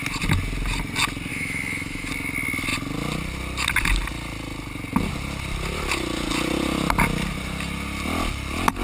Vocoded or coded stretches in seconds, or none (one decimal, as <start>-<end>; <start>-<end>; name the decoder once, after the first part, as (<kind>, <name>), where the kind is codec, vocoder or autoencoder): 1.3-2.1 (autoencoder, DAC-VAE)